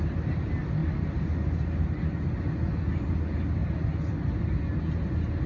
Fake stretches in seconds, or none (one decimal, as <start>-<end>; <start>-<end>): none